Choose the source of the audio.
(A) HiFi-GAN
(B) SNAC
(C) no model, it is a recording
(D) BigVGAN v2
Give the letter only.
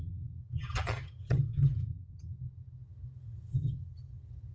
A